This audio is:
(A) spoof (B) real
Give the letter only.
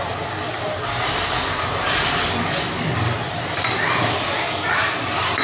B